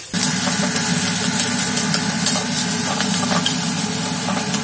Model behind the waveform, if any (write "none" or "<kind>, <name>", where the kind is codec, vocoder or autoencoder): none